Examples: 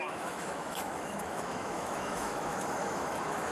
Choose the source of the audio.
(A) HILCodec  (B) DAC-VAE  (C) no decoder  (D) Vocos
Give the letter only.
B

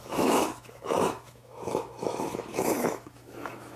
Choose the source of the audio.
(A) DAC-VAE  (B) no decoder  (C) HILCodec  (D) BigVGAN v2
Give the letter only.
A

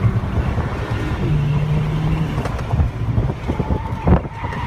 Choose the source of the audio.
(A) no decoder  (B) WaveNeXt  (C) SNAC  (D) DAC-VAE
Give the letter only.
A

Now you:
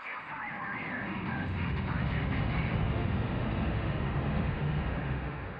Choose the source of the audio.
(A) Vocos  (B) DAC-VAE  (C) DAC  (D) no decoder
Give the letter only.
B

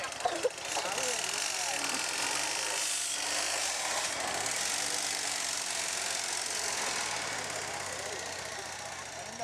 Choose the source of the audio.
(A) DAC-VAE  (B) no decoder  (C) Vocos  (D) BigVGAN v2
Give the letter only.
B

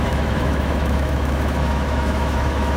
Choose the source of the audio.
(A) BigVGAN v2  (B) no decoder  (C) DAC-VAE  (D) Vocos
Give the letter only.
C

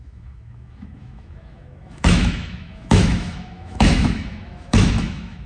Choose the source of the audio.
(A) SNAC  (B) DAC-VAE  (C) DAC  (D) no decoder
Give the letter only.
B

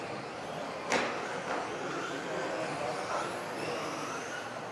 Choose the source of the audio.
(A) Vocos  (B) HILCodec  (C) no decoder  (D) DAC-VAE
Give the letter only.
C